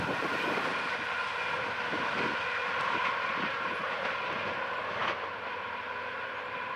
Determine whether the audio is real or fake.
real